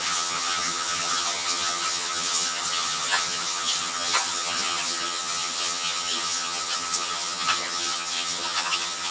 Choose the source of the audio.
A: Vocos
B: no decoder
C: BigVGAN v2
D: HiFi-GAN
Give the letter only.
D